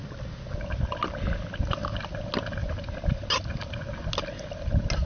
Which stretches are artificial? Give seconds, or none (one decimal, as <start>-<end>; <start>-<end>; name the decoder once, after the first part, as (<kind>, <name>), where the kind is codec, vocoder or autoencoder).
none

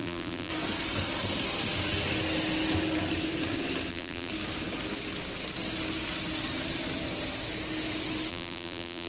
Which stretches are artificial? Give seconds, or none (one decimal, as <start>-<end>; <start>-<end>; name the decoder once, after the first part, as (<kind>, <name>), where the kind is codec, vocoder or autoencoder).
0.0-0.5 (vocoder, BigVGAN v2); 3.9-4.3; 8.3-9.1

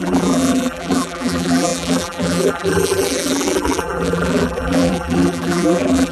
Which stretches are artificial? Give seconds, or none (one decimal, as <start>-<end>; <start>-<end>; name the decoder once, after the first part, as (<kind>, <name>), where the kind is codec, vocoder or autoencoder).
0.0-6.1 (vocoder, BigVGAN v2)

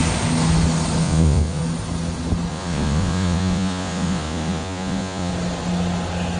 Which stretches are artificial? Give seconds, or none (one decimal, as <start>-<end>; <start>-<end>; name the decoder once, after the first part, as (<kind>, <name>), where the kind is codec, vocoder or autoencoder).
1.0-1.6 (vocoder, Vocos); 2.5-5.3

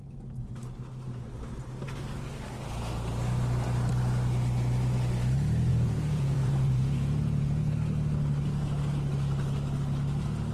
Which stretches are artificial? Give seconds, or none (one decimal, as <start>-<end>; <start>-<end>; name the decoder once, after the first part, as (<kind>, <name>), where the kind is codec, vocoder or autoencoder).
5.7-7.7 (vocoder, Vocos)

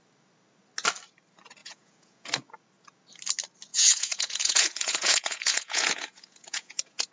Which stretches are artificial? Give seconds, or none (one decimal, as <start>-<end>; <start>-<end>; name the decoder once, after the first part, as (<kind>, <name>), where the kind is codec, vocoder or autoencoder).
1.6-2.5 (vocoder, Vocos); 3.7-7.1

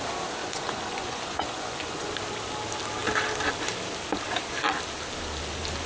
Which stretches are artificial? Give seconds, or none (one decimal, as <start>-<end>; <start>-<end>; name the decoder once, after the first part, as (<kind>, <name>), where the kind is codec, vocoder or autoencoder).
0.4-2.1 (vocoder, Vocos)

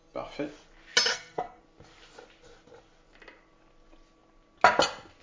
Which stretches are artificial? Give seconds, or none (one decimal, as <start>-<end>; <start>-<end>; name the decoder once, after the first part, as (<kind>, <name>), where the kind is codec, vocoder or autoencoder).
1.1-1.6 (codec, SNAC)